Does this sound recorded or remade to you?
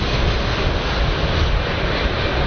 recorded